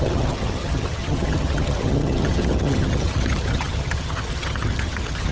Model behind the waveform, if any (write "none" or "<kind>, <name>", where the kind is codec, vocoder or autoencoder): vocoder, HiFi-GAN